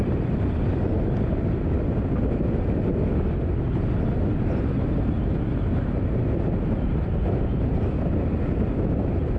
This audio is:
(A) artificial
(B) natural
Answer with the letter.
B